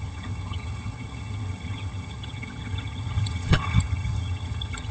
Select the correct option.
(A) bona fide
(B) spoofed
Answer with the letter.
B